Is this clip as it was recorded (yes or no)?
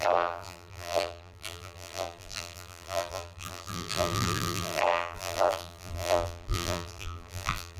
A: no